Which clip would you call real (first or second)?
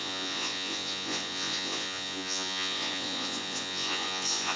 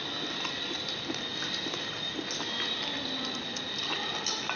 second